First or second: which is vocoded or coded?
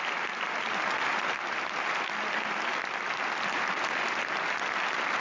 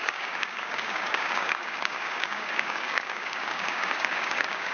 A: second